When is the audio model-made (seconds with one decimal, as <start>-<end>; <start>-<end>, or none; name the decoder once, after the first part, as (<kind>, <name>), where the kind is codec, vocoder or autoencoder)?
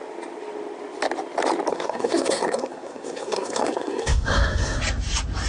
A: 1.7-4.8 (codec, SNAC)